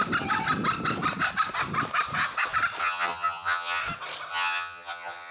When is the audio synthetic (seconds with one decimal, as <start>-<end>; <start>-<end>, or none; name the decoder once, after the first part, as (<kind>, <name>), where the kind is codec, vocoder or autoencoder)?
2.8-3.8 (vocoder, HiFi-GAN); 4.3-5.3